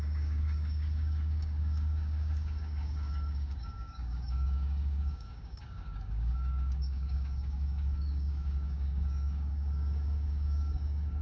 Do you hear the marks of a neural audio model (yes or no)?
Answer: yes